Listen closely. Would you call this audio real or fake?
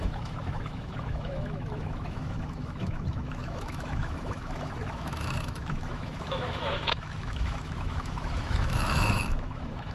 fake